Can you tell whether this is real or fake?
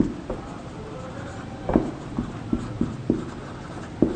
fake